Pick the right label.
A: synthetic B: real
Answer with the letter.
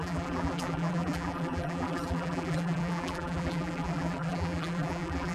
A